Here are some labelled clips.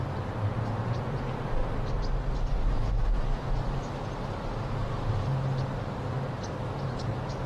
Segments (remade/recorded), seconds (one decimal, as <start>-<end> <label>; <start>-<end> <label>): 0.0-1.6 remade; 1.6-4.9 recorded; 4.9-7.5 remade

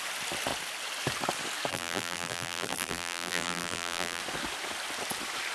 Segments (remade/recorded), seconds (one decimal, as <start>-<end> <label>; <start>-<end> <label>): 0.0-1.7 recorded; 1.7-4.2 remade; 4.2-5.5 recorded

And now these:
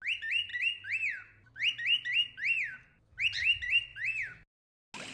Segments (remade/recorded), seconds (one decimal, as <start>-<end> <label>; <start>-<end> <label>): 0.0-5.1 recorded